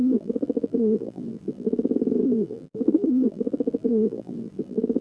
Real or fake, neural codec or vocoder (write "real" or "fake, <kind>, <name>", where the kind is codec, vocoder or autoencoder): fake, vocoder, BigVGAN v2